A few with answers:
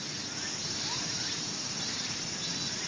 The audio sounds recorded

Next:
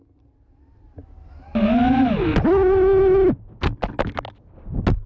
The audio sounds recorded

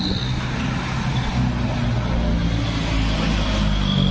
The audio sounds recorded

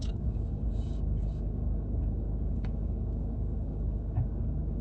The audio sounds remade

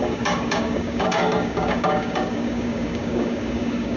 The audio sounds remade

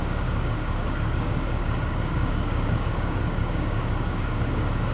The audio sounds remade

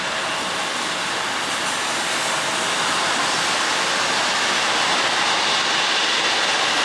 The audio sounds recorded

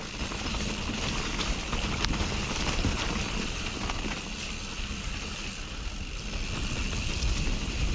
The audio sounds recorded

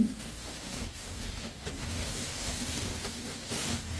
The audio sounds remade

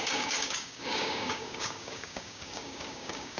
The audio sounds remade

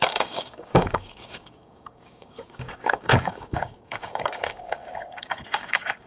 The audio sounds remade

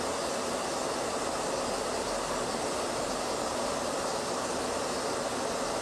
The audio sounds recorded